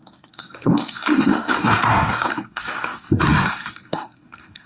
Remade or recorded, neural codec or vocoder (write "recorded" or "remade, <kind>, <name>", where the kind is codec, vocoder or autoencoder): remade, codec, SNAC